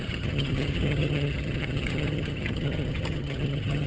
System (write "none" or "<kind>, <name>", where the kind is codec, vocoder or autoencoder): vocoder, HiFi-GAN